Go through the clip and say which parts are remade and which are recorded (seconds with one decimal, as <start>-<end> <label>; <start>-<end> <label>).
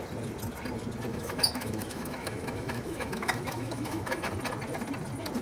0.0-1.1 recorded; 1.1-4.3 remade; 4.3-5.4 recorded